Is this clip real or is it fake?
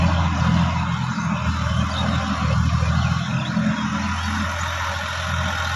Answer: real